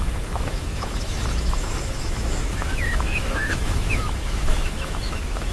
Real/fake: fake